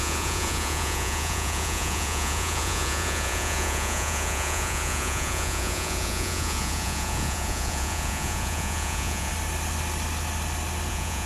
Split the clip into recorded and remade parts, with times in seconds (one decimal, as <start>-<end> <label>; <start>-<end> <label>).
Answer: 0.0-9.3 remade; 9.3-10.9 recorded; 10.9-11.3 remade

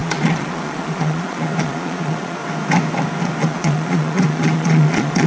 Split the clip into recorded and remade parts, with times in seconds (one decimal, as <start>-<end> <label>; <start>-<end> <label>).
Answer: 0.0-2.4 remade; 2.4-3.4 recorded; 3.4-5.3 remade

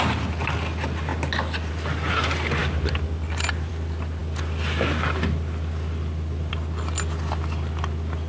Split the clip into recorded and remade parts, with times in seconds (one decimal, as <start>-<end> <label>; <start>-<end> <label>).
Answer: 0.0-8.3 recorded